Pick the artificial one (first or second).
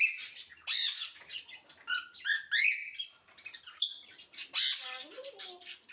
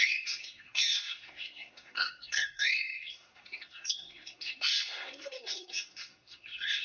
second